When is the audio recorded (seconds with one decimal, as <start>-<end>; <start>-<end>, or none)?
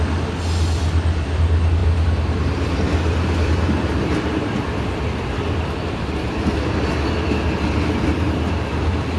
0.0-9.2